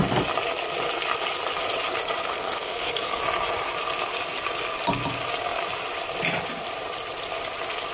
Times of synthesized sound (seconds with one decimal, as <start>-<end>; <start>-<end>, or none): 2.2-3.2